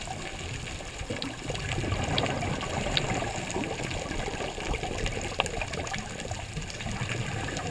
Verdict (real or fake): fake